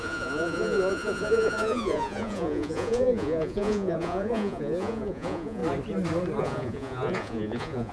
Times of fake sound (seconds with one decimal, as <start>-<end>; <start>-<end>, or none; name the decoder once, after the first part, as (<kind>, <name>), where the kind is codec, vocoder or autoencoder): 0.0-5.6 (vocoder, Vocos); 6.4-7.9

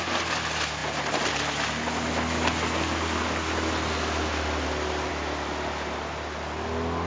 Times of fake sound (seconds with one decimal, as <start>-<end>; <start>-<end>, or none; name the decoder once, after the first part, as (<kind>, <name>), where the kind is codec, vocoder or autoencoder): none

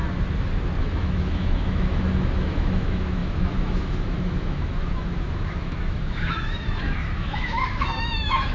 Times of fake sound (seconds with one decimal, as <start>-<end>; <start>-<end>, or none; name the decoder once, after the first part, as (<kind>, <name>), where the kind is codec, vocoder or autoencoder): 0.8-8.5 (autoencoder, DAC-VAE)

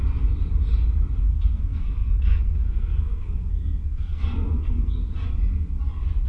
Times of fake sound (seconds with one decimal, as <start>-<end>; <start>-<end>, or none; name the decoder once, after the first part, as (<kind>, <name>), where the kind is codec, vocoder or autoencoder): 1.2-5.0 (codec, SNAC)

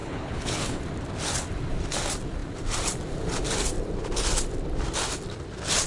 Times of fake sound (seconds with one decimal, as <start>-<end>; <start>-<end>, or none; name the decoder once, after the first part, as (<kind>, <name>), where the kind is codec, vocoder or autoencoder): 0.0-0.8 (codec, HILCodec)